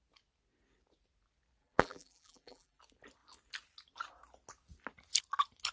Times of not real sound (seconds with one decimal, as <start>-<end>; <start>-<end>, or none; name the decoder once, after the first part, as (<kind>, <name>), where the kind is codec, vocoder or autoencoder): 1.6-2.8 (vocoder, BigVGAN v2)